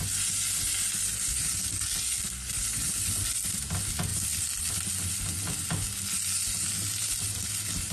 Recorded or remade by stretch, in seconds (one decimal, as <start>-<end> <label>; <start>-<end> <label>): 0.0-7.9 recorded